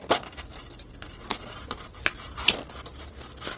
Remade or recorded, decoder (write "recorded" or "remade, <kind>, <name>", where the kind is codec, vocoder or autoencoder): recorded